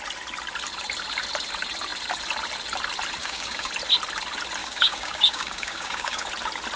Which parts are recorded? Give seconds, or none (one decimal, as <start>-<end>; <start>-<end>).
0.0-3.2; 3.7-4.6; 6.3-6.8